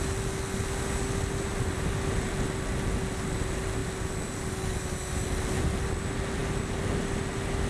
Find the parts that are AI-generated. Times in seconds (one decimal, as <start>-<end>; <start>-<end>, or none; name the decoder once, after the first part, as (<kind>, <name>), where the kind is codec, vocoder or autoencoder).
none